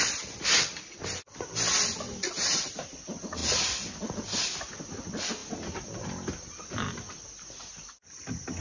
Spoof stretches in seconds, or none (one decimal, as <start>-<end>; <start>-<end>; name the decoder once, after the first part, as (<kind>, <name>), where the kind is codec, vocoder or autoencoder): none